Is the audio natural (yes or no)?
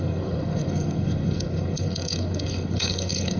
no